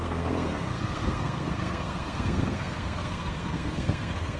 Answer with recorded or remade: remade